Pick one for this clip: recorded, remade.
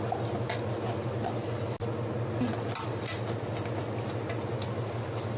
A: recorded